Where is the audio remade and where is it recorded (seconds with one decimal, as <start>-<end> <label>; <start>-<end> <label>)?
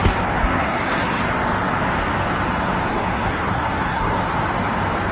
0.0-0.4 recorded; 0.4-1.2 remade; 1.2-2.9 recorded; 2.9-4.2 remade; 4.2-5.1 recorded